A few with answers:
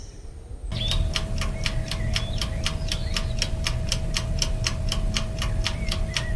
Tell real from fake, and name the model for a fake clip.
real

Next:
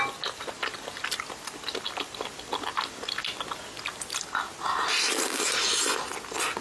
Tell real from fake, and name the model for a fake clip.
real